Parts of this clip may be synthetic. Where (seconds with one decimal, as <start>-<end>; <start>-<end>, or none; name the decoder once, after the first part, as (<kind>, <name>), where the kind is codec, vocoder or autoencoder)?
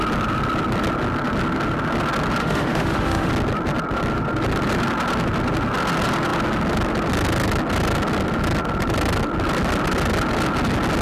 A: 2.4-3.3 (autoencoder, DAC-VAE)